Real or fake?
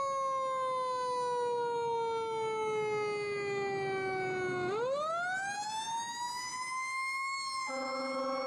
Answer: real